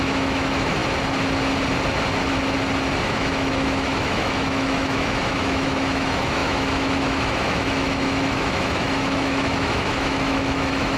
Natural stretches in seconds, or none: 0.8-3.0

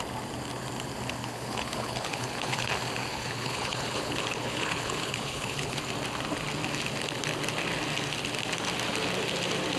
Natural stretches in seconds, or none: 0.0-1.2; 2.7-3.1; 5.8-9.8

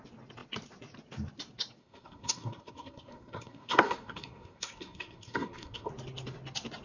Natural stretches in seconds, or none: 0.0-1.8; 5.9-6.8